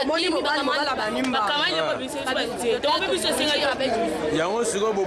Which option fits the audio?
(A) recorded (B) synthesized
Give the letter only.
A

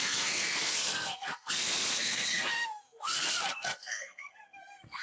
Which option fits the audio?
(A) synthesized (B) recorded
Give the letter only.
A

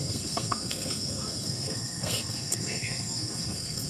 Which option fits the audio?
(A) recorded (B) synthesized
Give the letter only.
B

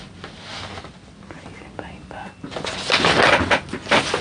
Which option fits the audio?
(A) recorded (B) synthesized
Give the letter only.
A